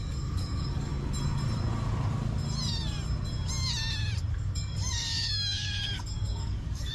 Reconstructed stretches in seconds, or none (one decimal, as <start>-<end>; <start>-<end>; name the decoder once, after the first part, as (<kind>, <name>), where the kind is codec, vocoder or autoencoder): 0.0-0.9 (codec, DAC); 4.3-6.9